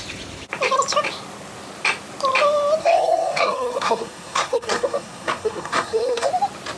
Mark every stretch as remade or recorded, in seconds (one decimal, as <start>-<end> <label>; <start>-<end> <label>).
0.0-2.8 recorded; 2.8-6.3 remade; 6.3-6.8 recorded